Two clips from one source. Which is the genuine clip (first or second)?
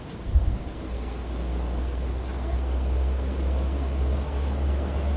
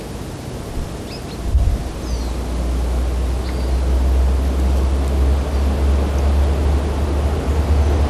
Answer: second